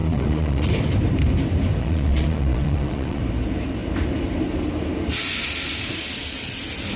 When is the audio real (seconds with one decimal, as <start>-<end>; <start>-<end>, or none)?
0.7-1.8; 3.2-7.0